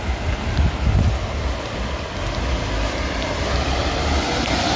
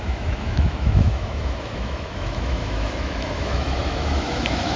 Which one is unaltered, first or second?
first